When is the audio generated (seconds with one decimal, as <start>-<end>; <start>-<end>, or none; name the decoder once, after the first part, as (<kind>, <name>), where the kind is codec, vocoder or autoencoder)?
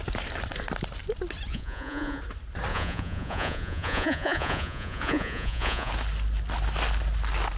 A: 1.5-2.2 (vocoder, Vocos); 2.7-5.9